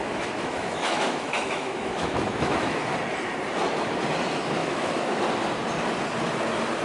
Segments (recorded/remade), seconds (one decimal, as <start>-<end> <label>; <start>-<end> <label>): 0.0-2.8 remade; 2.8-4.6 recorded; 4.6-5.2 remade; 5.2-6.8 recorded